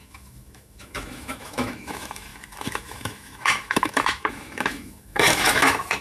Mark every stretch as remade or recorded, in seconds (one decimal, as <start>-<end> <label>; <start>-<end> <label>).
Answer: 0.0-6.0 remade